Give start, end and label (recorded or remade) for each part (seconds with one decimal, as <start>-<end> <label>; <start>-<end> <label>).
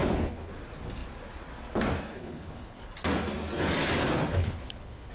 0.0-0.5 remade; 0.5-2.1 recorded; 2.1-2.9 remade; 2.9-4.4 recorded; 4.4-5.1 remade